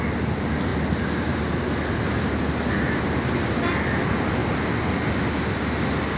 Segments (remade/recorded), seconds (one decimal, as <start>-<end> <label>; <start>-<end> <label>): 0.0-6.2 recorded